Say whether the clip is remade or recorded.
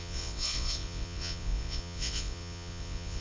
remade